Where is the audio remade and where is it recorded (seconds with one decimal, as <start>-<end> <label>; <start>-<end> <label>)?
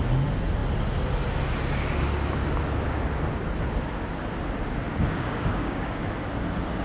0.0-4.9 recorded; 4.9-6.0 remade; 6.0-6.8 recorded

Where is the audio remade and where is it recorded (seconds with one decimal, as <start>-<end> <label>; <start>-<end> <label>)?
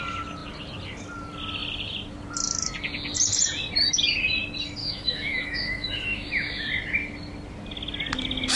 0.0-4.8 recorded; 4.8-6.3 remade; 6.3-8.6 recorded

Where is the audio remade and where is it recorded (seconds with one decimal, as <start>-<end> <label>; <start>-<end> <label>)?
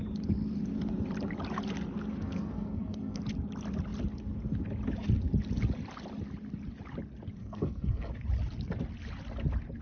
0.0-2.1 recorded; 2.1-3.2 remade; 3.2-7.4 recorded; 7.4-8.1 remade; 8.1-9.8 recorded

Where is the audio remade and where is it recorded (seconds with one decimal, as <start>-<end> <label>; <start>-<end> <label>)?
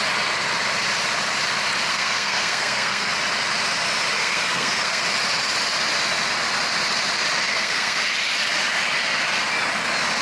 0.0-1.9 recorded; 1.9-3.1 remade; 3.1-4.2 recorded; 4.2-5.0 remade; 5.0-7.5 recorded; 7.5-8.0 remade; 8.0-10.2 recorded